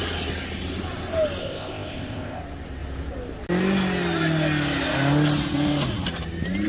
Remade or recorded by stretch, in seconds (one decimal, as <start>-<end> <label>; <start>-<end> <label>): 0.0-1.4 recorded; 1.4-2.4 remade; 2.4-6.7 recorded